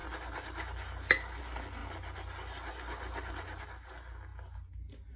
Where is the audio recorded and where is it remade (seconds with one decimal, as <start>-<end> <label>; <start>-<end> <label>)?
0.0-5.2 recorded